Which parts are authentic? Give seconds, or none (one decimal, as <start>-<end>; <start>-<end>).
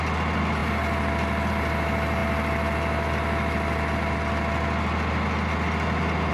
0.0-6.3